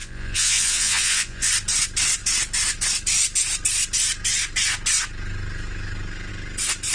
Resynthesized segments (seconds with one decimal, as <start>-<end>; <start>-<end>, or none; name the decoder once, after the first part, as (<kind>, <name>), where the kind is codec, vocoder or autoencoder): 0.0-1.5 (vocoder, Vocos)